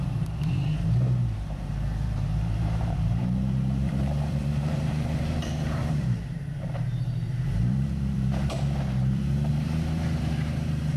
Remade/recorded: remade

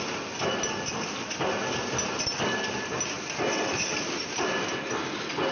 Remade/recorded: recorded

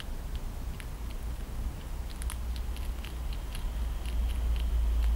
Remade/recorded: recorded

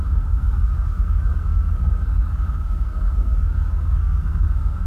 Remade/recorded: remade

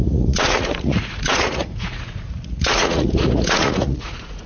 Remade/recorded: remade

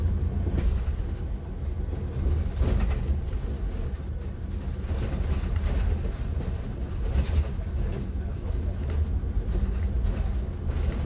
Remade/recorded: recorded